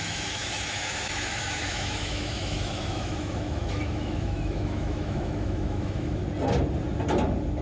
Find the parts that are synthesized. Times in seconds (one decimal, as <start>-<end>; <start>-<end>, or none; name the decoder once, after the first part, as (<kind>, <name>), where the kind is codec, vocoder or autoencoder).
0.0-6.2 (autoencoder, DAC-VAE)